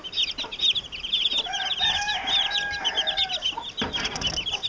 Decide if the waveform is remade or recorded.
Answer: recorded